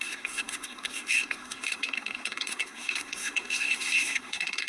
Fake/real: fake